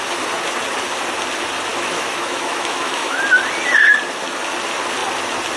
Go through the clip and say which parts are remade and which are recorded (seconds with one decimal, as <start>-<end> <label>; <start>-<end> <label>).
0.0-1.7 recorded; 1.7-3.2 remade; 3.2-5.6 recorded